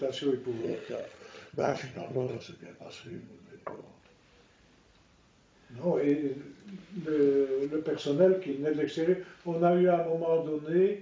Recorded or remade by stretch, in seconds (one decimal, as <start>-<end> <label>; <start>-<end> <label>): 0.0-0.6 recorded; 0.6-4.0 remade; 4.0-11.0 recorded